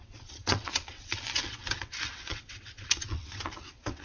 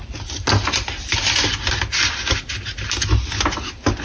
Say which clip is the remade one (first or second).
first